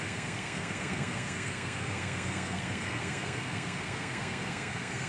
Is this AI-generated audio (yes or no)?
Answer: yes